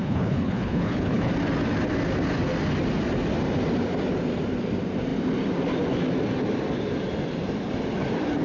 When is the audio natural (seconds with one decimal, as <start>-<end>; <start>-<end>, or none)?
1.3-8.4

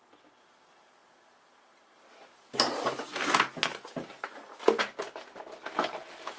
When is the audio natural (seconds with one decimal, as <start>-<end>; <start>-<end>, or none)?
0.0-6.4

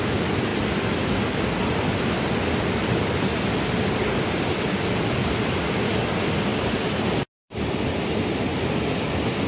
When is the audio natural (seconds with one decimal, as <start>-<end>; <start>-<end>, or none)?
0.0-9.5

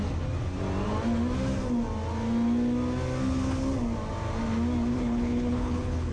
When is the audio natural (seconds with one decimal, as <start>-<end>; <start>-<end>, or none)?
0.0-4.9

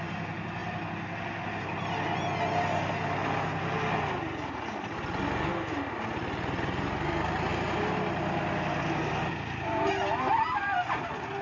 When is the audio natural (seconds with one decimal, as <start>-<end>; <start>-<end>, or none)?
0.0-11.4

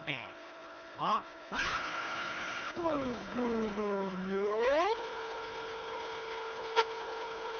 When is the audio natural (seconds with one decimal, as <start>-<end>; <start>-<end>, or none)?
none